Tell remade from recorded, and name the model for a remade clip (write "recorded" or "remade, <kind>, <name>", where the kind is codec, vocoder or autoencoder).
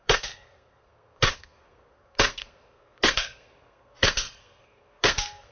remade, codec, SNAC